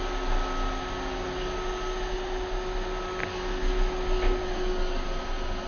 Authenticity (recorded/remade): recorded